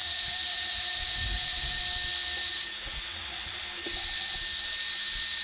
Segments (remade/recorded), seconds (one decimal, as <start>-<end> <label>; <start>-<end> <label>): 0.0-1.8 remade; 1.8-2.5 recorded; 2.5-3.6 remade; 3.6-5.4 recorded